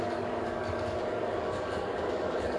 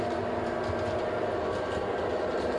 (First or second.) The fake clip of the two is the first